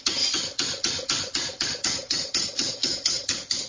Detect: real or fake fake